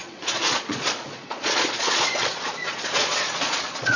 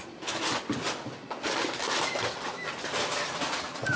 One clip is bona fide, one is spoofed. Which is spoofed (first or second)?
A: first